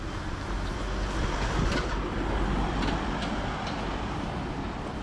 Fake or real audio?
real